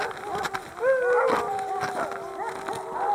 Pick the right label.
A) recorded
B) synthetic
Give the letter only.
A